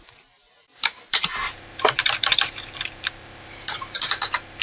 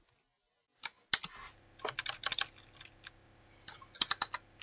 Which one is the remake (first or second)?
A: first